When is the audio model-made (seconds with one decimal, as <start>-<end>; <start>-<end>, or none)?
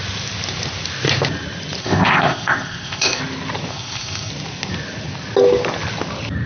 1.8-3.2; 3.7-4.3